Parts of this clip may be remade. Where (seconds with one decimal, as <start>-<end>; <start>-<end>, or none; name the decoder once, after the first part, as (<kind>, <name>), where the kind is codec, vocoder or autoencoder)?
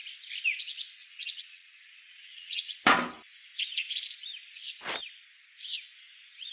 1.0-2.8 (vocoder, Vocos)